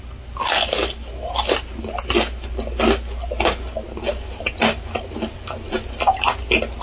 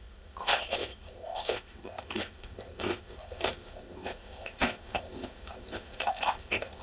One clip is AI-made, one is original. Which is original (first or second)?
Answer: first